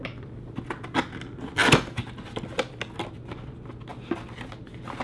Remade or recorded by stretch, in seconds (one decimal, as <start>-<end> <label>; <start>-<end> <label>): 0.0-5.0 recorded